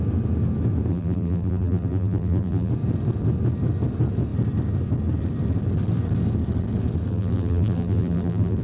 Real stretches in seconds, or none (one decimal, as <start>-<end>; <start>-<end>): 0.0-0.9; 2.7-7.1